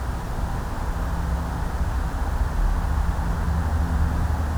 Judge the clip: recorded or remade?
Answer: recorded